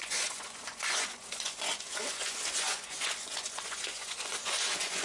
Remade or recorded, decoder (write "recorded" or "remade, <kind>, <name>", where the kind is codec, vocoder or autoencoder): remade, vocoder, Vocos